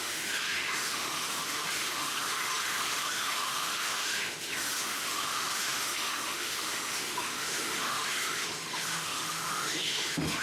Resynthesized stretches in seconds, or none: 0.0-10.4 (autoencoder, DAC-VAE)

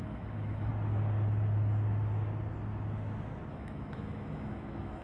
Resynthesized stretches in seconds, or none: 0.0-0.7 (autoencoder, DAC-VAE); 3.5-5.0

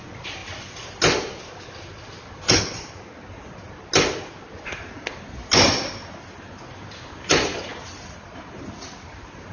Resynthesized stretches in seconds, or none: none

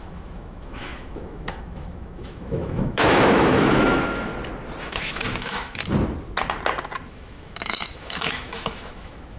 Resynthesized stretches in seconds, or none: 0.0-4.3 (autoencoder, DAC-VAE); 4.8-5.8; 7.1-9.4

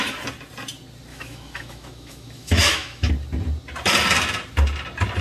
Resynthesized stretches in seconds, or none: 1.1-3.1 (autoencoder, DAC-VAE)